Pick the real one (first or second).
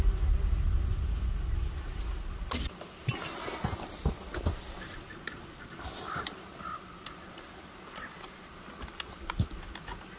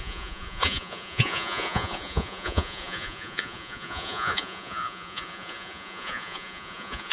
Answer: first